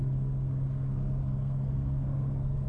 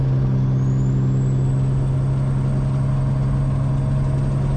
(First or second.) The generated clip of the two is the first